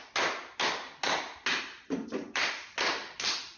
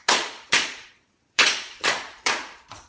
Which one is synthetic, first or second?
second